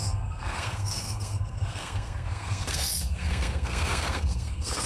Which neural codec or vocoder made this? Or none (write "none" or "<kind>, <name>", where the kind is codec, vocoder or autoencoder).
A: codec, SNAC